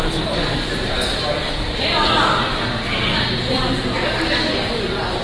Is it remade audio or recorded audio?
recorded